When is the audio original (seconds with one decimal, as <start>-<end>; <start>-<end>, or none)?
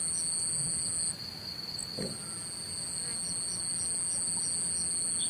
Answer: 0.0-5.3